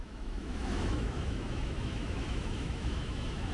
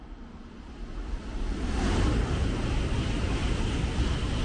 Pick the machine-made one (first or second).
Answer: first